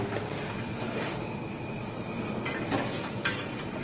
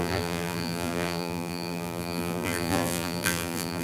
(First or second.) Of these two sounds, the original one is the first